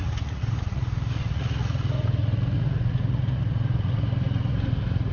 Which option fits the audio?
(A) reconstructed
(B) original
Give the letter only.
A